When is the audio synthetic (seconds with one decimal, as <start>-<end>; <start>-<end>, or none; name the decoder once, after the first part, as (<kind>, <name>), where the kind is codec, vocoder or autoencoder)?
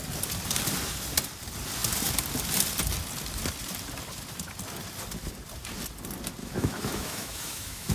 6.4-7.9 (autoencoder, DAC-VAE)